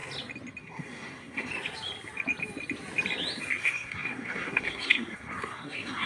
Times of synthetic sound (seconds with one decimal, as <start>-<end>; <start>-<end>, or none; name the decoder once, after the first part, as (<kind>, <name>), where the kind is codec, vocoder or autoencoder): 0.6-1.5 (codec, SNAC); 3.6-6.1